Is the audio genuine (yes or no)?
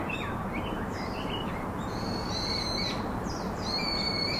no